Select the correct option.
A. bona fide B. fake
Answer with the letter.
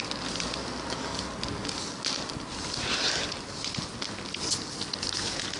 A